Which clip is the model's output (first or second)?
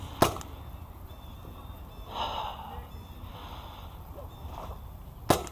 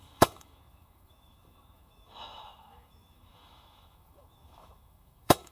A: second